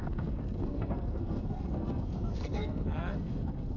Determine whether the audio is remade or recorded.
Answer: remade